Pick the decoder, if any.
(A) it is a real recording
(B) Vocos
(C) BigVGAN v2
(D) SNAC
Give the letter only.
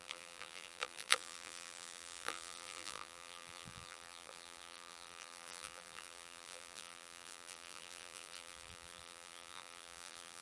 C